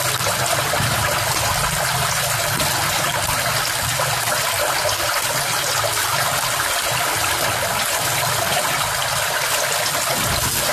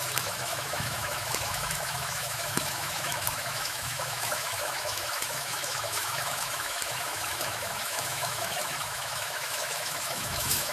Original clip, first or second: first